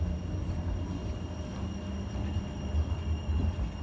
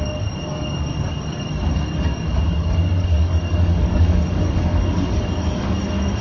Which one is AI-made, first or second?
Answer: second